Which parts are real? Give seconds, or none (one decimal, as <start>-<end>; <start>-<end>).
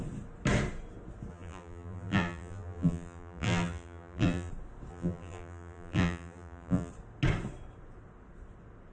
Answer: 0.0-1.3; 4.5-4.9; 6.9-8.9